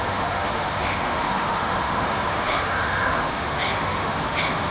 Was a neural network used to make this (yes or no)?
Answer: yes